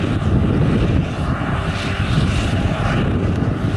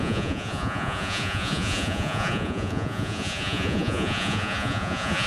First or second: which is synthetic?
second